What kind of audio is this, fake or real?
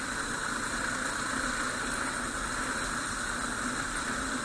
real